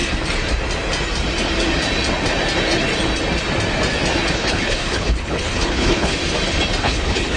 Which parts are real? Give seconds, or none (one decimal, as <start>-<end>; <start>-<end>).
0.0-4.3; 6.2-6.8